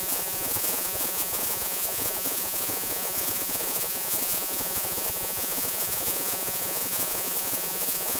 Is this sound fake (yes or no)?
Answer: yes